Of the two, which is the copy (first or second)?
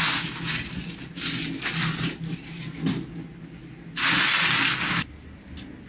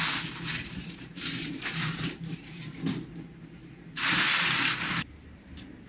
second